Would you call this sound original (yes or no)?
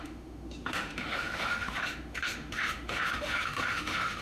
no